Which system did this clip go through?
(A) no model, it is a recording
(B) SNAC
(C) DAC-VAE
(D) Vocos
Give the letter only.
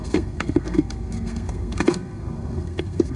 B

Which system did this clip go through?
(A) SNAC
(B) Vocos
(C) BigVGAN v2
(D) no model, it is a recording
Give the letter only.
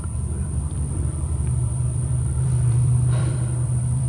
C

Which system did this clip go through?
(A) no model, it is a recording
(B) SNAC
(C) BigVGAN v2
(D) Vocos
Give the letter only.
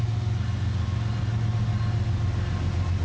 A